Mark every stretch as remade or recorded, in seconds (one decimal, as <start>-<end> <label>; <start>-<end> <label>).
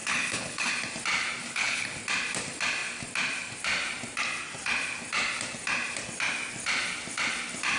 0.0-0.7 remade; 0.7-1.4 recorded; 1.4-2.0 remade; 2.0-7.8 recorded